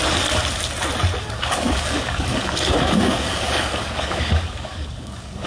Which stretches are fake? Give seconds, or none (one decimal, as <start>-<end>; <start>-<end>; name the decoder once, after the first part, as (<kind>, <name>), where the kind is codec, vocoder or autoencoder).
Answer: 1.2-5.5 (codec, DAC)